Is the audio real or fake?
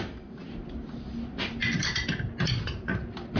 real